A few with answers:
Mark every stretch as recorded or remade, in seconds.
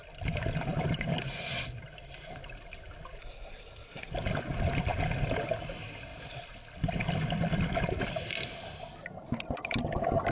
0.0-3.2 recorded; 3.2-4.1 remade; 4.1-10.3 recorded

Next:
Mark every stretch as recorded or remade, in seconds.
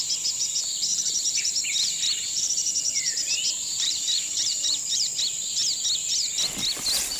0.0-0.9 recorded; 0.9-5.2 remade; 5.2-7.2 recorded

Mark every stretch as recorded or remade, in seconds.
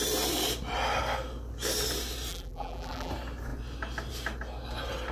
0.0-2.3 recorded; 2.3-3.1 remade; 3.1-5.1 recorded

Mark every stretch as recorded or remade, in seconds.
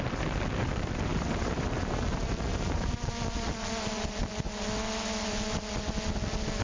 0.0-1.1 recorded; 1.1-1.8 remade; 1.8-2.5 recorded; 2.5-4.3 remade; 4.3-6.6 recorded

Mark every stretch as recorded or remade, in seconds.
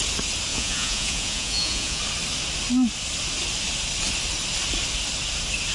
0.0-0.5 recorded; 0.5-2.0 remade; 2.0-5.7 recorded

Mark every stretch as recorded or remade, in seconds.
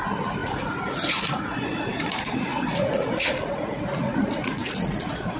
0.0-5.4 remade